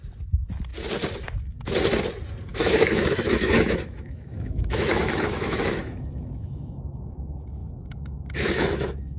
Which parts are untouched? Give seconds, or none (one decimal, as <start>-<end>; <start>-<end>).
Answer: 0.0-2.5; 6.8-7.6